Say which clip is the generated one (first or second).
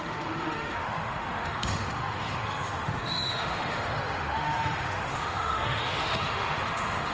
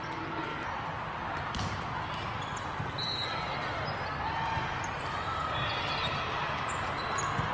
first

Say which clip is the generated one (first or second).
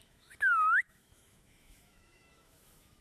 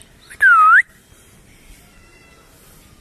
first